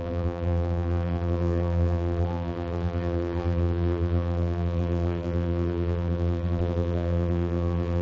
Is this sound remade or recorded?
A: remade